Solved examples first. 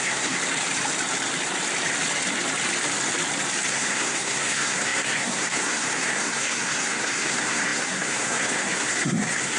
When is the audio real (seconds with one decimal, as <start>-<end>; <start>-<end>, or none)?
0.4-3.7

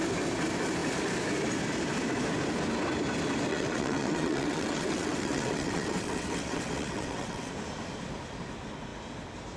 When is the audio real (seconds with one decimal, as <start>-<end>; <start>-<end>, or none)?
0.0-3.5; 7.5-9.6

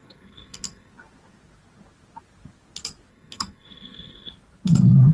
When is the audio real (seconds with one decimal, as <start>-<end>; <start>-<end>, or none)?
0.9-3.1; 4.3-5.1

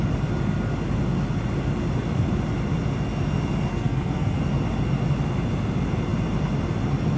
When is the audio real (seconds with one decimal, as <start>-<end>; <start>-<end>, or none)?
0.0-3.7; 4.4-7.2

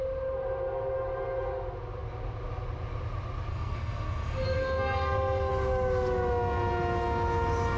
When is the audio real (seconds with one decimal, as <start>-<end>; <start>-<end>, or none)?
0.0-3.5; 5.5-7.8

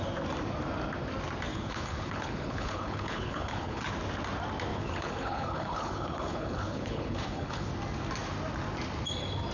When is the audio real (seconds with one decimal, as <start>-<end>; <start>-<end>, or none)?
0.0-1.5; 3.9-4.7; 7.7-9.5

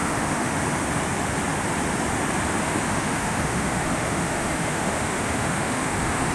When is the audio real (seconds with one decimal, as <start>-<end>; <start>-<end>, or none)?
0.6-2.6

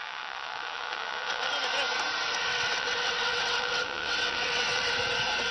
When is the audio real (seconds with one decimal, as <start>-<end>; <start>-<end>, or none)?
1.5-2.5; 4.9-5.5